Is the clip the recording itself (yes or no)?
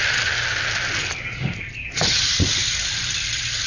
yes